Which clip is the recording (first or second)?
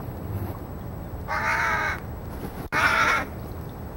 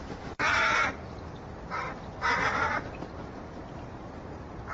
first